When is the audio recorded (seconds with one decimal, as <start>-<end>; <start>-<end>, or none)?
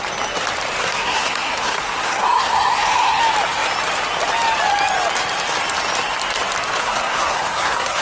0.0-0.8; 3.2-6.8